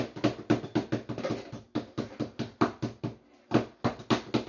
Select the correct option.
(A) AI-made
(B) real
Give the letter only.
B